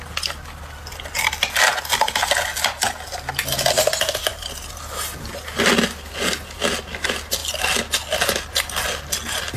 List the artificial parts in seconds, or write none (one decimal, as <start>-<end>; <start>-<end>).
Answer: none